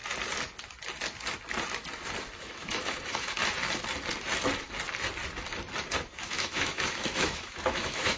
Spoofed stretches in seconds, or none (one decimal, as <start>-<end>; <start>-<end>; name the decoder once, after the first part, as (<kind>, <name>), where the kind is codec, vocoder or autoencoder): 2.4-3.4 (autoencoder, DAC-VAE); 6.2-8.2